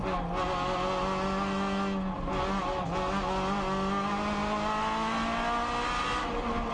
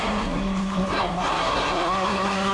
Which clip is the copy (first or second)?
second